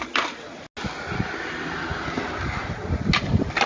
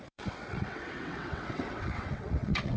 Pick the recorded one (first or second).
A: first